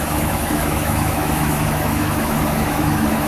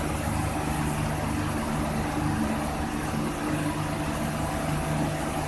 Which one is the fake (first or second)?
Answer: first